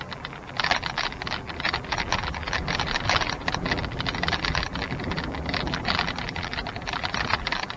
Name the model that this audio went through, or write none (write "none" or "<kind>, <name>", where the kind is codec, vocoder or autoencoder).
vocoder, BigVGAN v2